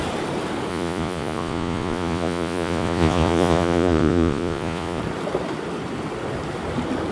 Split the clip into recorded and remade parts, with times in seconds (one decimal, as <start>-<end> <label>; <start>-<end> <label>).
0.0-0.7 recorded; 0.7-5.0 remade; 5.0-7.1 recorded